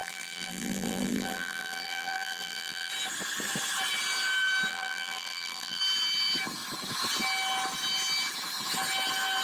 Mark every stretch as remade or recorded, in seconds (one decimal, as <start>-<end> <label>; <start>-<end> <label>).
0.0-2.9 remade; 2.9-4.7 recorded; 4.7-5.8 remade; 5.8-9.4 recorded